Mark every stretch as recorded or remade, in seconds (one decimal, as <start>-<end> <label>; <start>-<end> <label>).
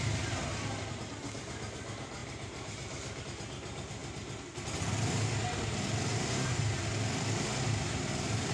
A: 0.0-2.2 recorded; 2.2-3.2 remade; 3.2-6.1 recorded; 6.1-6.6 remade; 6.6-8.5 recorded